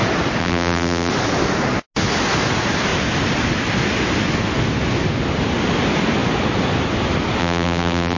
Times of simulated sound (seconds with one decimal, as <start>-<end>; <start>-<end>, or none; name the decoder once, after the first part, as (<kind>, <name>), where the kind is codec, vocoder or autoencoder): 0.4-1.1 (vocoder, BigVGAN v2); 7.4-8.2